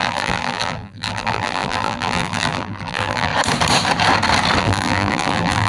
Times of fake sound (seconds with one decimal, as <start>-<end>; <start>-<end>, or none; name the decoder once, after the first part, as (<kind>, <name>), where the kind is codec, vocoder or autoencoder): 0.0-3.3 (vocoder, BigVGAN v2); 4.6-5.7